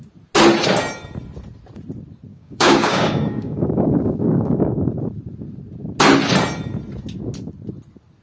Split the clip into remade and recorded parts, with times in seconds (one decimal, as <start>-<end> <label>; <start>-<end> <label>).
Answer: 0.0-2.3 recorded; 2.3-4.9 remade; 4.9-8.2 recorded